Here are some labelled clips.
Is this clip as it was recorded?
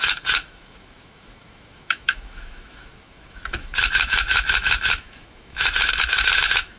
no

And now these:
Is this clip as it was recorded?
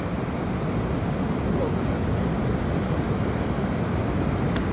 yes